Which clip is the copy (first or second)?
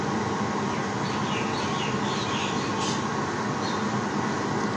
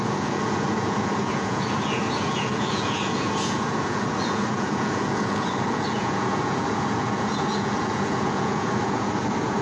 second